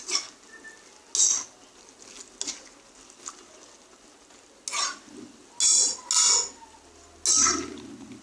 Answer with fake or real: real